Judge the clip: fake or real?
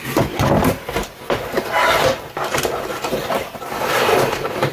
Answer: fake